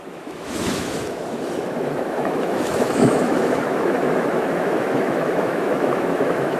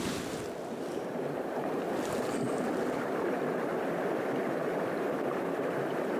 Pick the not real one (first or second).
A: first